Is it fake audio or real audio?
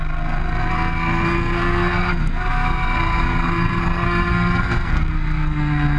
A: fake